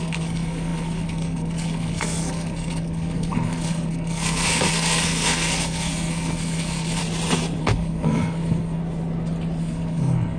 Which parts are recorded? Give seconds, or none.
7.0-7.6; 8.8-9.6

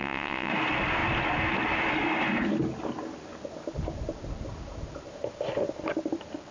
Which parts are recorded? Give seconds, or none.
0.5-6.5

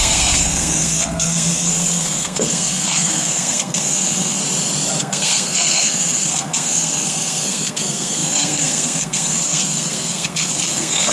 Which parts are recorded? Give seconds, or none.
4.4-5.0

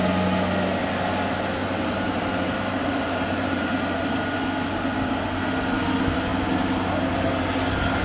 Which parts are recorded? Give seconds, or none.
0.0-1.6; 4.2-8.0

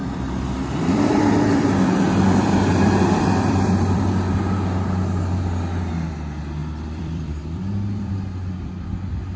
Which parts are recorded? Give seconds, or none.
4.1-6.6; 8.1-9.4

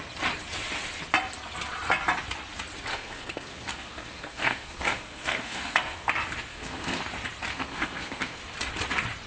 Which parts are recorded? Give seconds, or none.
0.0-2.9; 6.1-6.5; 7.0-7.5; 8.4-9.3

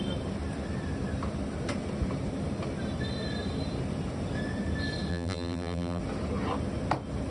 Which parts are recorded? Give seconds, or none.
0.0-5.1; 6.0-7.3

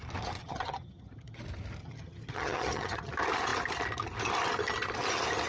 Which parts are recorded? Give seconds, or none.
0.0-0.4; 1.4-1.8; 3.1-5.5